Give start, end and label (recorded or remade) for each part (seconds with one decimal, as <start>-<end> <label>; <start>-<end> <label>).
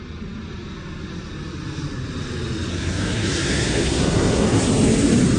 0.0-2.7 recorded; 2.7-4.7 remade; 4.7-5.4 recorded